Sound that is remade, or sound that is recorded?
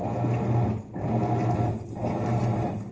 recorded